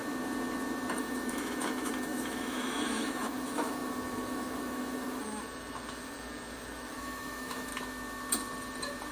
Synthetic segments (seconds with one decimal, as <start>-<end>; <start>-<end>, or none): 1.0-7.7